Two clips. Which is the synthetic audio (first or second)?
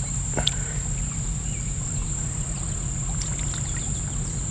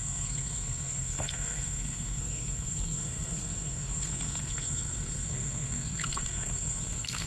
second